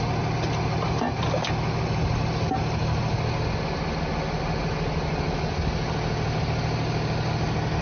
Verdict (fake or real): real